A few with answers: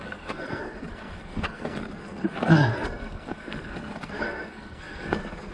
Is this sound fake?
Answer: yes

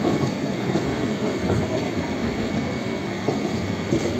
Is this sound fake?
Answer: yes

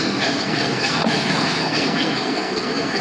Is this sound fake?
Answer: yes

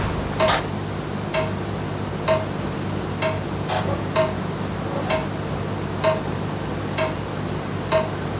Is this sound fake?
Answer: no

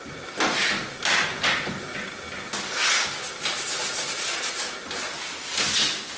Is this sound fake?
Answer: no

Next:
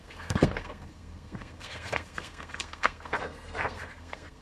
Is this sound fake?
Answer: yes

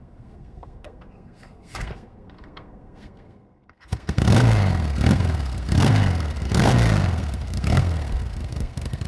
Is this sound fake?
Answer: yes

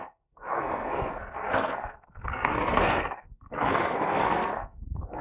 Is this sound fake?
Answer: yes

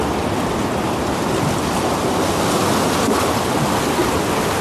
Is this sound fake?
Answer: no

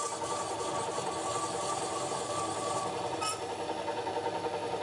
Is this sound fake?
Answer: no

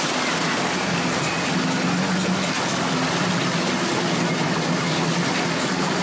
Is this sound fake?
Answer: no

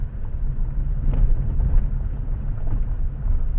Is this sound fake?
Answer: no